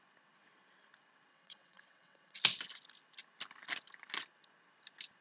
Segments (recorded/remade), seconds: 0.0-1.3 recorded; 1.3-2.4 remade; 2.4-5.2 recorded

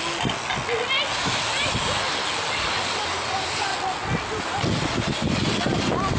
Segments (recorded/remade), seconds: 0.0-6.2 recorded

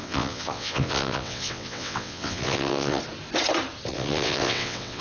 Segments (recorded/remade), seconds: 0.0-3.0 remade; 3.0-3.9 recorded; 3.9-5.0 remade

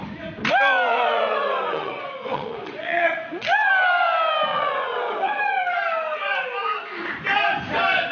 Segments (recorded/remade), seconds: 0.0-0.9 recorded; 0.9-3.7 remade; 3.7-4.5 recorded; 4.5-5.4 remade; 5.4-8.1 recorded

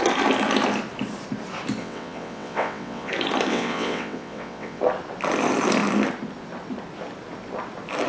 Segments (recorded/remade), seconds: 0.0-1.8 recorded; 1.8-3.1 remade; 3.1-3.5 recorded; 3.5-4.8 remade; 4.8-8.1 recorded

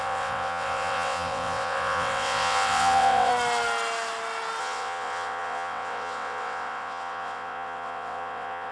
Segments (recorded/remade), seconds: 0.0-3.3 remade; 3.3-4.6 recorded; 4.6-8.7 remade

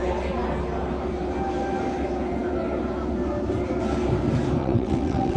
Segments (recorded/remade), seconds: 0.0-4.6 recorded; 4.6-5.4 remade